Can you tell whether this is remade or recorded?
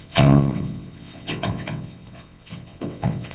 remade